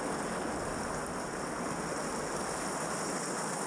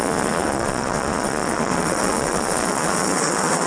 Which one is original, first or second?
first